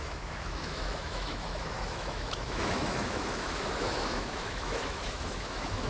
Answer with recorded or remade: remade